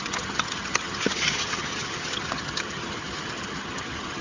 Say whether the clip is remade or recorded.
remade